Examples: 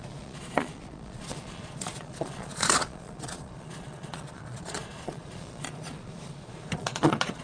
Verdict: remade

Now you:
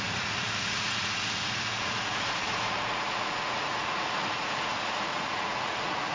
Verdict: remade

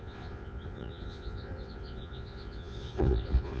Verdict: remade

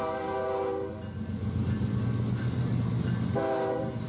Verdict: recorded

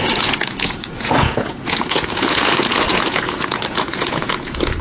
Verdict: remade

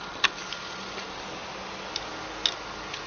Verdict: recorded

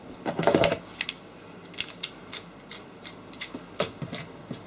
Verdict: recorded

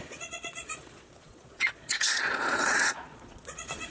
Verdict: remade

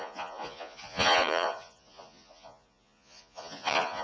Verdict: remade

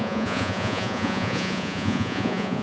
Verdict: remade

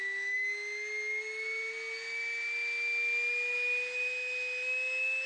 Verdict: recorded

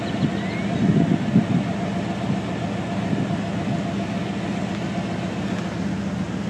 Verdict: recorded